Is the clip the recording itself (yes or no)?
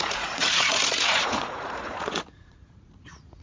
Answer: no